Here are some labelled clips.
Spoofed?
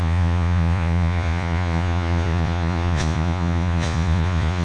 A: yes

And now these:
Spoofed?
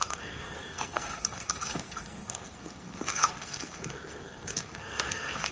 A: yes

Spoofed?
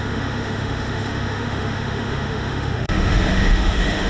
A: yes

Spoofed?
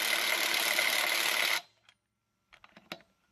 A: no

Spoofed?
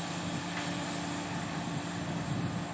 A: no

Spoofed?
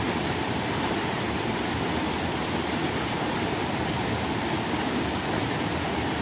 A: no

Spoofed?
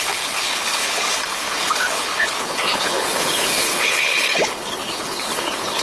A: yes